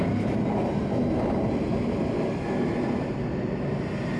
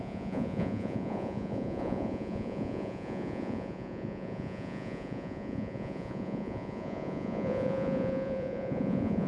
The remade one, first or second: second